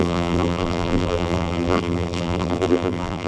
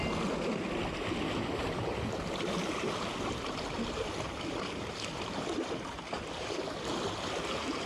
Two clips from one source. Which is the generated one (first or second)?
first